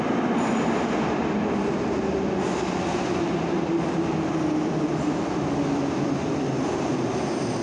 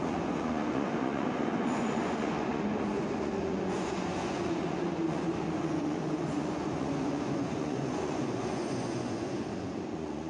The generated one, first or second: second